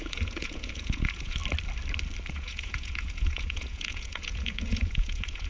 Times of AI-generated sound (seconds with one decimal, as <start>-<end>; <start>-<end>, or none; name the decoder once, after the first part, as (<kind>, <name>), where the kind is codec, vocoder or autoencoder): 0.0-1.4 (vocoder, Vocos); 2.3-5.5